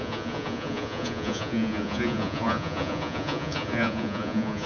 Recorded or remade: remade